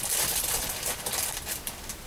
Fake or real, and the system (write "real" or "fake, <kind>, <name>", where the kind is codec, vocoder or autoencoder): fake, vocoder, BigVGAN v2